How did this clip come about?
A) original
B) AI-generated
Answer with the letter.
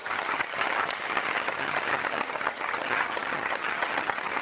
B